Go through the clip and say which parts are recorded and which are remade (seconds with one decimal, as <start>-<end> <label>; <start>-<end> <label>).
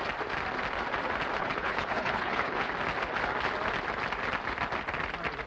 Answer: 0.0-1.4 recorded; 1.4-2.7 remade; 2.7-5.5 recorded